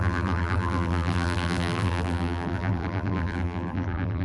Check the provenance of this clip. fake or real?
fake